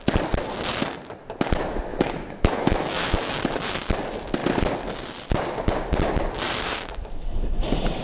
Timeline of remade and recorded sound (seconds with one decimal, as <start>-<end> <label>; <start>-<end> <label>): 0.0-1.9 recorded; 1.9-3.4 remade; 3.4-8.0 recorded